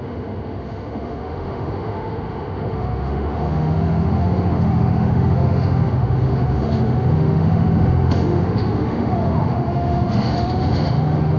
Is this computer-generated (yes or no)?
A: yes